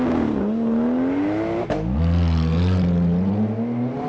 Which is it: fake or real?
real